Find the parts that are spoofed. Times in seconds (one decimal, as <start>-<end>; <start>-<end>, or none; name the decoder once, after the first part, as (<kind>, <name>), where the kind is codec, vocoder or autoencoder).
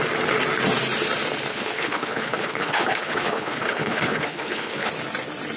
1.5-4.9 (codec, HILCodec)